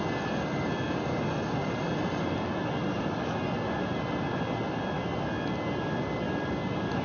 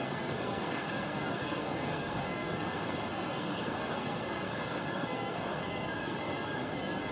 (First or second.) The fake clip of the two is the second